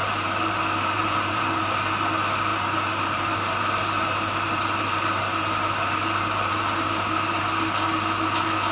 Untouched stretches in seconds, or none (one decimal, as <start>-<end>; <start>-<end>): 1.4-2.5; 7.4-8.7

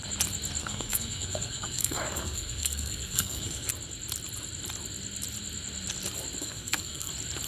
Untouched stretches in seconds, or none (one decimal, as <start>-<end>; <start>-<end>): 0.0-0.6; 3.7-6.4; 7.1-7.5